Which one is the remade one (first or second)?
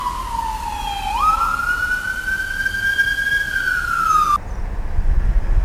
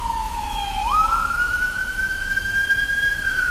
second